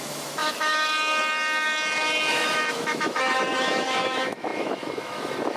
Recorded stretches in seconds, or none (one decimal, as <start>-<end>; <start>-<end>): none